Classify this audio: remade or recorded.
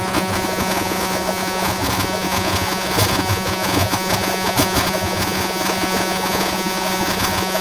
remade